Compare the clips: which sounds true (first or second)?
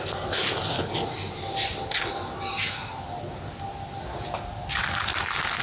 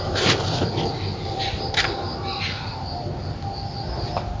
first